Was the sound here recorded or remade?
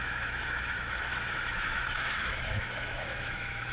remade